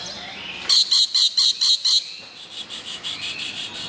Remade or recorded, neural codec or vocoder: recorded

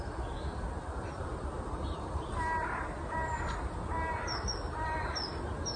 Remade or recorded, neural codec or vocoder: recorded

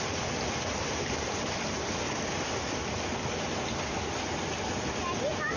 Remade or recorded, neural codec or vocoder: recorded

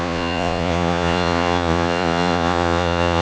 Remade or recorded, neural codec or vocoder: remade, vocoder, Vocos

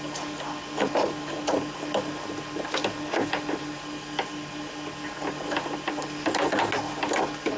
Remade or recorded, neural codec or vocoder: recorded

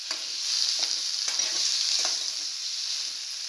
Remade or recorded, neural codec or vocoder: recorded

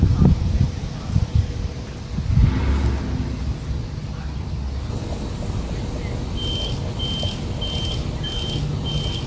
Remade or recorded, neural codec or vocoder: recorded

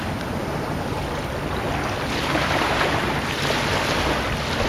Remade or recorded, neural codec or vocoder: recorded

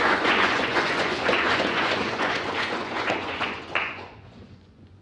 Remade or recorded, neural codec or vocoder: remade, vocoder, Vocos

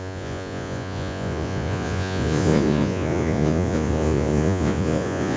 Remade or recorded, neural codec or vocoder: remade, vocoder, Vocos